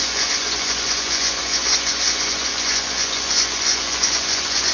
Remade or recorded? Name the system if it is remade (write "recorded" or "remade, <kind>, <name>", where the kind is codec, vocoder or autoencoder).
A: remade, vocoder, Vocos